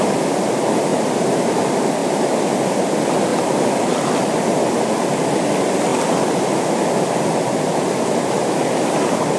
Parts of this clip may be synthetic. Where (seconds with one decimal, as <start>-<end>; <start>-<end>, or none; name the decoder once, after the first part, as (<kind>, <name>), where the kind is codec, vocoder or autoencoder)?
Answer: 0.9-1.6 (vocoder, BigVGAN v2); 2.0-2.9; 3.3-3.8